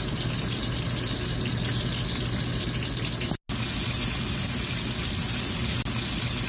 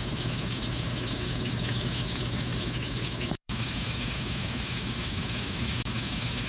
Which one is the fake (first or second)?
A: second